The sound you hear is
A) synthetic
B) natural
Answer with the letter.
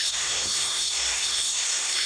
A